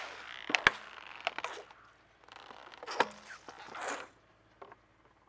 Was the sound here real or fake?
real